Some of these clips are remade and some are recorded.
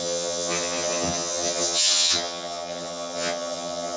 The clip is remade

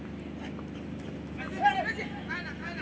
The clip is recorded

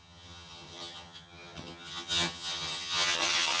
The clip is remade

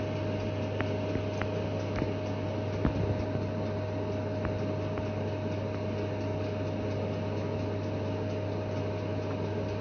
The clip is recorded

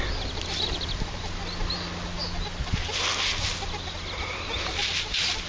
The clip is recorded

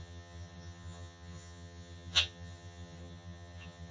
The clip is remade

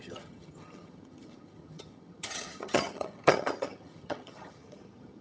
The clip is remade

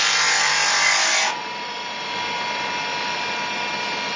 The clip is recorded